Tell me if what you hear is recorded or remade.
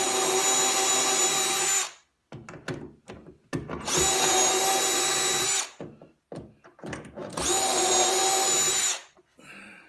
recorded